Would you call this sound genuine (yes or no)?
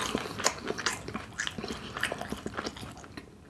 yes